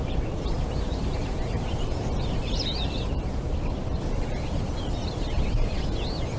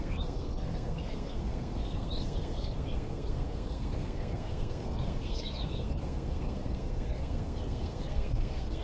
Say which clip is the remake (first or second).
second